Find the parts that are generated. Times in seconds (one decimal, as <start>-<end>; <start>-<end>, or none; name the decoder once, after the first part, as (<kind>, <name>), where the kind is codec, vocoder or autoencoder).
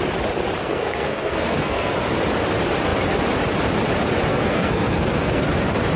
0.6-1.9 (codec, SNAC); 4.3-5.4